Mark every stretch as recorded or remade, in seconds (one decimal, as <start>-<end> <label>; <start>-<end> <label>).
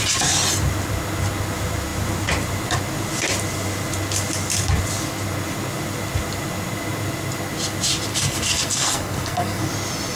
0.0-8.1 recorded; 8.1-9.7 remade; 9.7-10.2 recorded